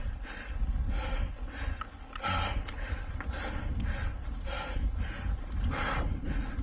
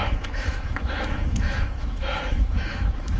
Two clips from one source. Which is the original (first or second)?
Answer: first